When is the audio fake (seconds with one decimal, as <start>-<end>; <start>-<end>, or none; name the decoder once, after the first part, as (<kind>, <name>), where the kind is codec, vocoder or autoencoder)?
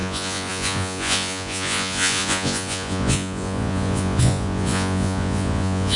0.0-6.0 (vocoder, Vocos)